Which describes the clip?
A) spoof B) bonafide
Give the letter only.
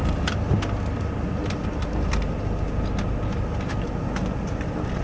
B